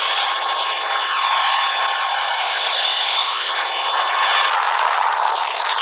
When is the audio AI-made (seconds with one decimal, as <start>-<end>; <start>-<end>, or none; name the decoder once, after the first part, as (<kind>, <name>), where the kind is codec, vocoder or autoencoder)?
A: 2.4-3.5 (codec, ZipCodec)

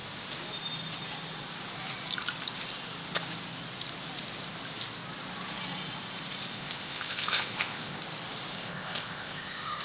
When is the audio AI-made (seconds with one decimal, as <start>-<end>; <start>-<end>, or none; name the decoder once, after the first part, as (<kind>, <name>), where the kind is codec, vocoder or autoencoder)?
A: 6.5-8.0 (codec, ZipCodec); 8.5-9.8

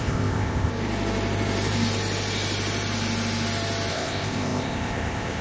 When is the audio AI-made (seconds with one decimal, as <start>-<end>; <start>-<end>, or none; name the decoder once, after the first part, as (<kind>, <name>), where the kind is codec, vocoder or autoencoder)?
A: 0.0-0.7 (codec, ZipCodec); 3.9-5.4

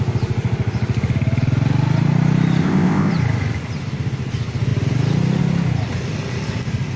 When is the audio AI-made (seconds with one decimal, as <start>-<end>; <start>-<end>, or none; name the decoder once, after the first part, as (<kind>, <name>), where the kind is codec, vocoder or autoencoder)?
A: 2.6-3.1 (codec, ZipCodec)

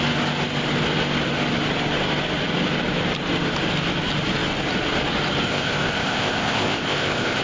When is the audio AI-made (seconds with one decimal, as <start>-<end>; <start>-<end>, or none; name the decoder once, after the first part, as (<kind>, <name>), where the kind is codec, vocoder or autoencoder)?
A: 5.5-7.4 (codec, ZipCodec)

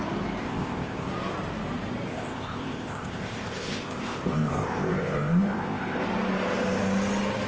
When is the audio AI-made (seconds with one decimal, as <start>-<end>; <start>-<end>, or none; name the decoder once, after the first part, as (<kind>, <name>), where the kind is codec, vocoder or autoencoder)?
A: 0.4-1.1 (codec, ZipCodec); 2.1-6.0

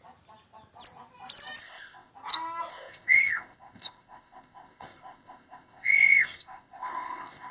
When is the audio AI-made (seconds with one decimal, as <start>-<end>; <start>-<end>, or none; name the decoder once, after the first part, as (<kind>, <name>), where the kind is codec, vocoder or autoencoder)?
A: 1.6-2.1 (codec, ZipCodec); 2.7-7.5